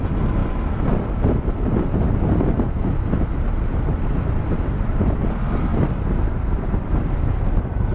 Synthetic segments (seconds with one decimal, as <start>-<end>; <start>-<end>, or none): 5.7-7.9